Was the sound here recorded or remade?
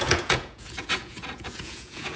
remade